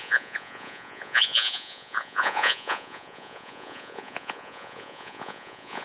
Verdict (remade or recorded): remade